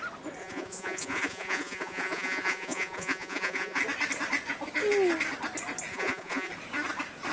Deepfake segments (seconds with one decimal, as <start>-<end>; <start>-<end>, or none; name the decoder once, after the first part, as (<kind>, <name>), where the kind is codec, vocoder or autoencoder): 0.4-3.8 (vocoder, Vocos); 5.9-6.5